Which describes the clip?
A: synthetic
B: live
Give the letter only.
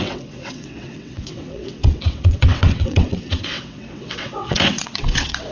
A